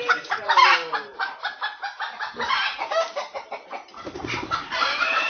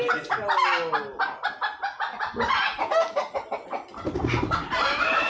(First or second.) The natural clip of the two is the second